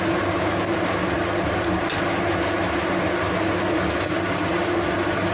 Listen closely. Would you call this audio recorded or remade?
recorded